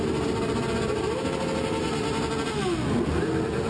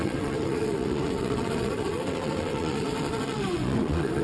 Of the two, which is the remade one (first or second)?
second